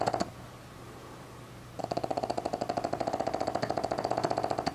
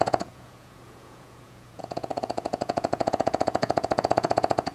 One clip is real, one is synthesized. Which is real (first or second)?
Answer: first